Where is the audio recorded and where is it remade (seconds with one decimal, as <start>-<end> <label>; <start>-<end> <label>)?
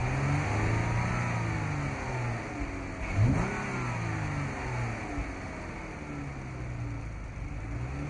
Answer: 0.0-8.1 recorded